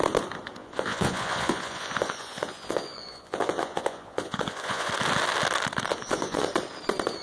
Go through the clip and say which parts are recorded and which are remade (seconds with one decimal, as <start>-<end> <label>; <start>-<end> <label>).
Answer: 0.0-0.6 recorded; 0.6-4.9 remade; 4.9-5.9 recorded; 5.9-6.5 remade; 6.5-7.2 recorded